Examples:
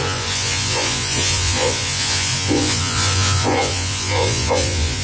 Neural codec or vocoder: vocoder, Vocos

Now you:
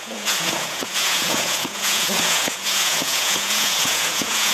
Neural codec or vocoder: vocoder, Vocos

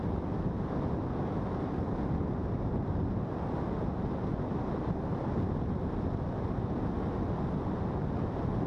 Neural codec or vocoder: none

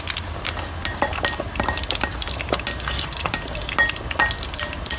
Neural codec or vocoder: none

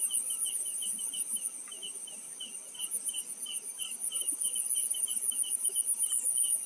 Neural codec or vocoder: none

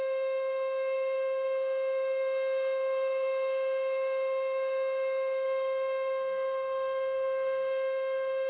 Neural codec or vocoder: codec, SNAC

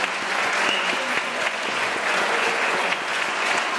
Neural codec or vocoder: vocoder, Vocos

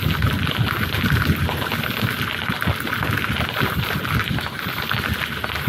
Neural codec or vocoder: none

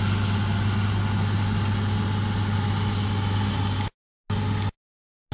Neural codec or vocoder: none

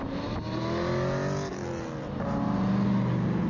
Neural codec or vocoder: none